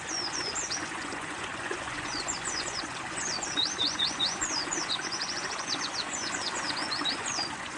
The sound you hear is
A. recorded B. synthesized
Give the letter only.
B